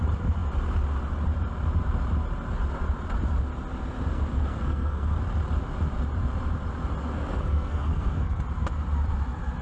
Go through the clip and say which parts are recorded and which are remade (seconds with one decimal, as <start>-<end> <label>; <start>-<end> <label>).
0.0-4.1 recorded; 4.1-5.2 remade; 5.2-7.0 recorded; 7.0-8.4 remade; 8.4-9.6 recorded